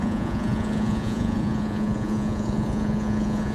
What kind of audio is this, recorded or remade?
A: remade